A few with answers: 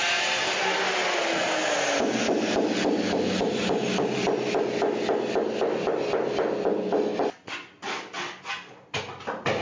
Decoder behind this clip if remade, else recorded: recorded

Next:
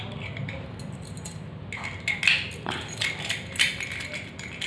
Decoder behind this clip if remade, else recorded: recorded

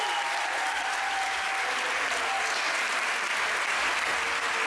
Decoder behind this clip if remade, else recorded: recorded